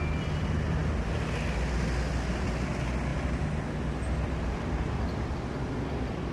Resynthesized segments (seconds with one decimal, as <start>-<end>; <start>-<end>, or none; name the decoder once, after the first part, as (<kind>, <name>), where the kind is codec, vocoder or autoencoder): none